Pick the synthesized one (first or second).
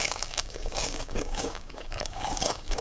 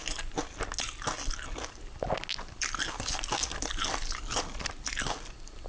first